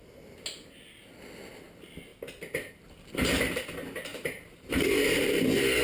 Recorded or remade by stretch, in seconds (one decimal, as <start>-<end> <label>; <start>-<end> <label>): 0.0-4.1 recorded; 4.1-4.7 remade; 4.7-5.8 recorded